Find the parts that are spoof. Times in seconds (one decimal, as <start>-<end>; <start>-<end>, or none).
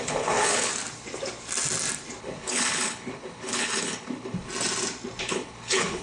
0.0-0.7; 2.2-4.5; 5.2-6.0